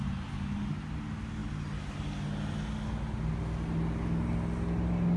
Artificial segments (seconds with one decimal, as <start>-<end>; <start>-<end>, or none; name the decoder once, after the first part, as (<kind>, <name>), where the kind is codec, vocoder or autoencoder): none

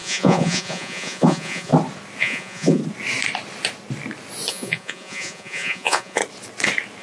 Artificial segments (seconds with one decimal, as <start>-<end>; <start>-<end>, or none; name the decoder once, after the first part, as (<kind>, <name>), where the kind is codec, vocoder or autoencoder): 0.0-1.7 (vocoder, Vocos); 2.2-2.8; 4.5-6.2

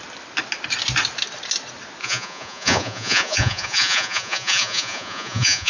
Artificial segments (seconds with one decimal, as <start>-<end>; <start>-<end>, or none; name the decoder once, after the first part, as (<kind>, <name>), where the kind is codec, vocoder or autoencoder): 2.0-5.7 (vocoder, Vocos)

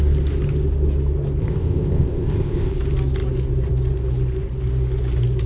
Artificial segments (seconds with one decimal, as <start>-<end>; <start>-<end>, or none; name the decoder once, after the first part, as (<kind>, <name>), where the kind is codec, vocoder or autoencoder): 1.4-2.7 (codec, ZipCodec)

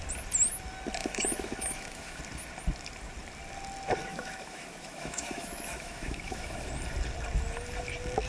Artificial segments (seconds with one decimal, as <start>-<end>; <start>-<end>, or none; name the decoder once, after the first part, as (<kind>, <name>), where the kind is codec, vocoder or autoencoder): 1.0-2.2 (autoencoder, DAC-VAE); 4.1-6.7

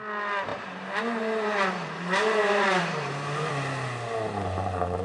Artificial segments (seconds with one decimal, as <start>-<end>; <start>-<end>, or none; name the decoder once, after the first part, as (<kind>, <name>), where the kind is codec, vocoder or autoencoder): 0.5-3.5 (vocoder, BigVGAN v2)

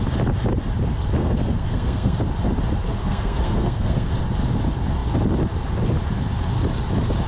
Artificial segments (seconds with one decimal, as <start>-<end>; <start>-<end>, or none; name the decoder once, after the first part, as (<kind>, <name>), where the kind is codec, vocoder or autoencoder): 1.2-2.2 (codec, SNAC); 3.0-4.1